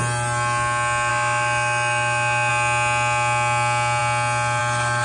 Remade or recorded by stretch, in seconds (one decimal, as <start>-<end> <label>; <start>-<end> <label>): 0.0-1.1 recorded; 1.1-2.5 remade; 2.5-5.0 recorded